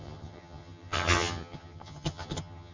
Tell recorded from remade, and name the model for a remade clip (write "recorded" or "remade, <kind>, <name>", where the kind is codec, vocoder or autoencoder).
remade, vocoder, HiFi-GAN